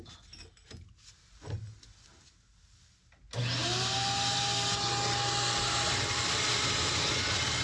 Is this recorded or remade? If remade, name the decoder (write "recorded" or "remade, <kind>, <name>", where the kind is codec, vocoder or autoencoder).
recorded